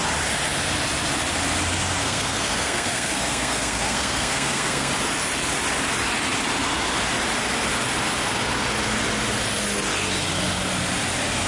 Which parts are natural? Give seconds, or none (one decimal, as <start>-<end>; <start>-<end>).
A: 0.0-2.0; 4.9-11.5